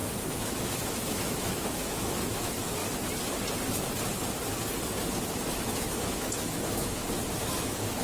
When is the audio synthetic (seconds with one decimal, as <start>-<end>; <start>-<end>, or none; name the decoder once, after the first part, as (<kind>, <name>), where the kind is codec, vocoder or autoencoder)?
0.0-2.8 (autoencoder, DAC-VAE); 5.5-7.0; 7.6-8.0